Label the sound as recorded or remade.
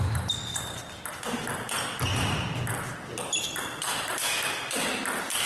recorded